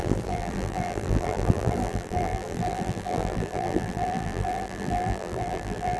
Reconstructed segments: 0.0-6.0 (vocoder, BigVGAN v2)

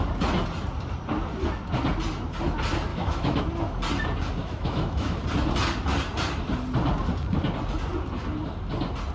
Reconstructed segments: 2.9-3.4 (autoencoder, DAC-VAE); 4.4-5.2

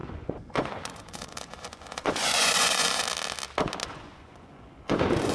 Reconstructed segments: 0.0-3.0 (vocoder, Vocos); 3.8-5.3

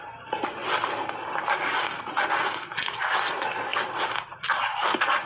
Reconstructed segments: none

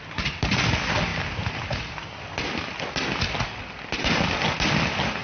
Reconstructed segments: none

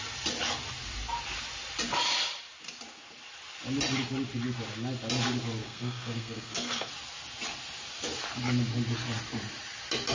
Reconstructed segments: 5.6-6.9 (codec, SNAC)